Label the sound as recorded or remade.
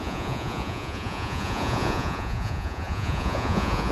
remade